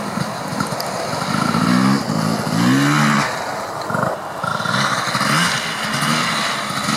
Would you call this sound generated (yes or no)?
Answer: no